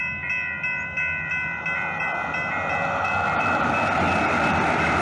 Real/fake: real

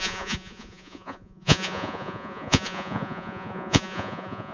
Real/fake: fake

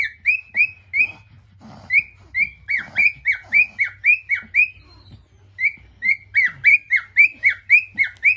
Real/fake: real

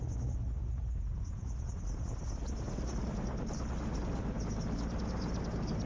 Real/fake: real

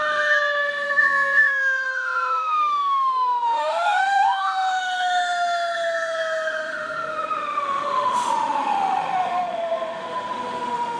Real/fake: fake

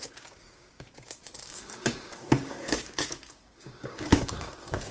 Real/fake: fake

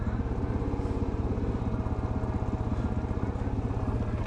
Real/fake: real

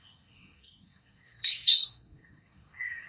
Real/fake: fake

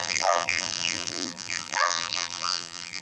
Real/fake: fake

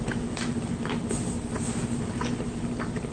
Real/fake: real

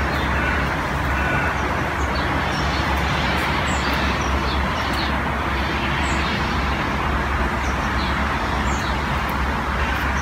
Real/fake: real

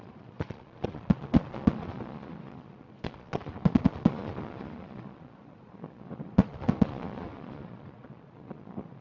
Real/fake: fake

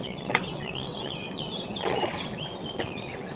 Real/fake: fake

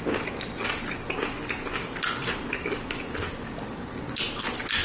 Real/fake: real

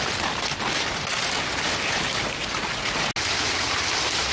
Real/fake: real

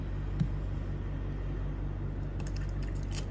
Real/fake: real